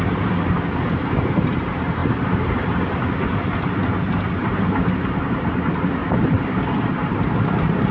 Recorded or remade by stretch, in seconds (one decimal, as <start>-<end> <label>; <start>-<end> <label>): 0.0-2.0 recorded; 2.0-2.8 remade; 2.8-4.4 recorded; 4.4-5.2 remade; 5.2-6.0 recorded; 6.0-7.3 remade; 7.3-7.9 recorded